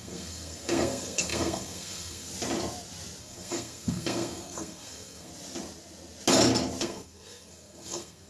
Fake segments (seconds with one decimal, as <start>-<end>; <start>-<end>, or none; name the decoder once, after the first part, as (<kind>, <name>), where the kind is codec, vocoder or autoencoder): 0.0-2.3 (codec, SNAC); 3.2-5.3; 6.8-8.3